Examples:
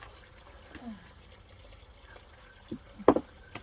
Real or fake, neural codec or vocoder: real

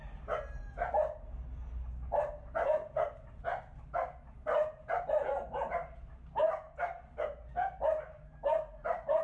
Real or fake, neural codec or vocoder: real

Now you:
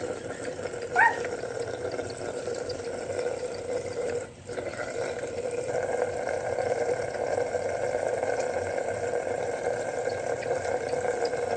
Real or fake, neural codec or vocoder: fake, vocoder, BigVGAN v2